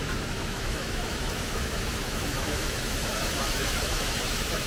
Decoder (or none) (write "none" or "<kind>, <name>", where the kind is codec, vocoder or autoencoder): autoencoder, DAC-VAE